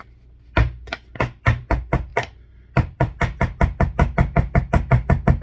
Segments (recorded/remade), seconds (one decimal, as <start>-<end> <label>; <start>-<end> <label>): 0.0-5.4 recorded